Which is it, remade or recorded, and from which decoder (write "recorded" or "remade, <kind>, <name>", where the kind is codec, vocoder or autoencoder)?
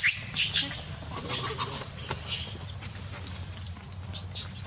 recorded